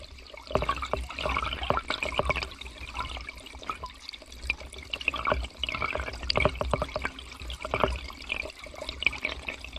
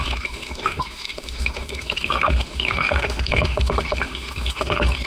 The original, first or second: first